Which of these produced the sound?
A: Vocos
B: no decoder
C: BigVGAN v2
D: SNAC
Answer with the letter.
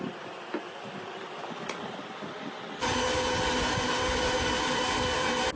B